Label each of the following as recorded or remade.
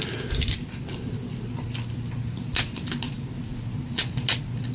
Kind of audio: recorded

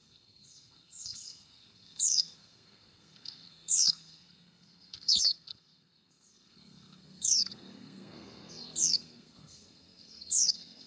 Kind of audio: remade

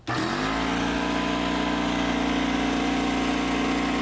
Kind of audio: recorded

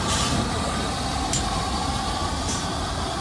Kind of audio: recorded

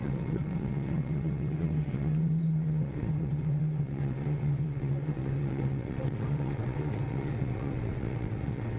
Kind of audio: remade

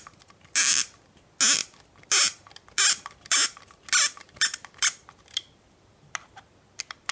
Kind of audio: recorded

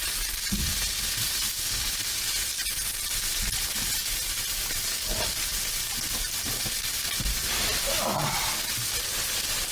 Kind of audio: recorded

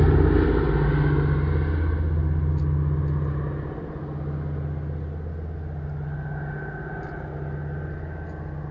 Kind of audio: recorded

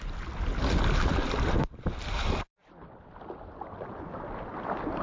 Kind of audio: recorded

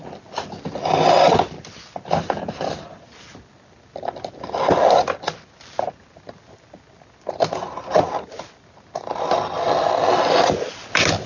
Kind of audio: recorded